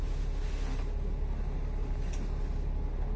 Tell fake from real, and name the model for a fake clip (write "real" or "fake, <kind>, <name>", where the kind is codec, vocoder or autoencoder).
real